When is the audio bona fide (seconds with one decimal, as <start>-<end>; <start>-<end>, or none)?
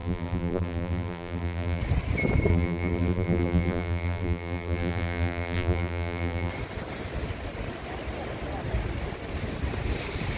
1.8-2.5; 6.5-10.4